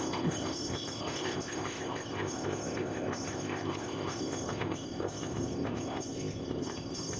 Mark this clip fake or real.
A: fake